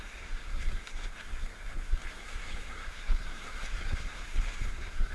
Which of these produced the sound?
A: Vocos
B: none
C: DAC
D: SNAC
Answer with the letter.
D